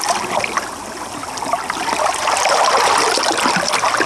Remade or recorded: recorded